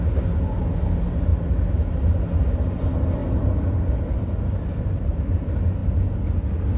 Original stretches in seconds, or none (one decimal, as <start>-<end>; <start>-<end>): 0.0-6.8